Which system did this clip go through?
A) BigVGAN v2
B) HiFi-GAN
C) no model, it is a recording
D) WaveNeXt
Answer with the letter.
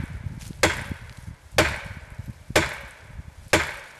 C